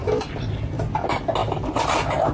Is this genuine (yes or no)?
yes